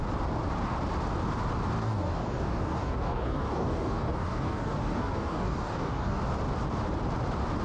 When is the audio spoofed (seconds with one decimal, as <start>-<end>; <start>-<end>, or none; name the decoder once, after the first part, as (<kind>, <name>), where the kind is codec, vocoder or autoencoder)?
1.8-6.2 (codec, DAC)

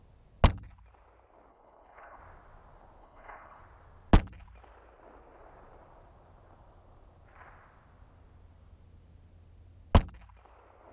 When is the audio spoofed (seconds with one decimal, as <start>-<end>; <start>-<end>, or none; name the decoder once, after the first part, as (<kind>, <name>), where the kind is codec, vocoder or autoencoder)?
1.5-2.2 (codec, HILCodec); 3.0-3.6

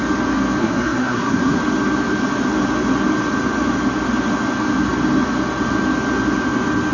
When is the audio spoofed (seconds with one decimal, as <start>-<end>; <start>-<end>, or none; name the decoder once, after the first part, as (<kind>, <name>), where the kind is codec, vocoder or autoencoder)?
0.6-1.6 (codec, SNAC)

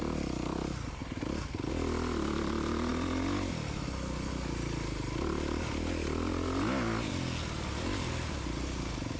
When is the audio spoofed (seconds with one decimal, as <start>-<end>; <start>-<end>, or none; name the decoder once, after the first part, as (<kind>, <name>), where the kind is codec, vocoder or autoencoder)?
none

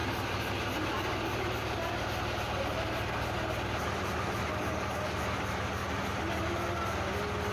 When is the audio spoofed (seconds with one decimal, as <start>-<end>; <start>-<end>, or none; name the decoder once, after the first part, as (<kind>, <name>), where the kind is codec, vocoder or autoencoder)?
4.5-5.2 (codec, DAC)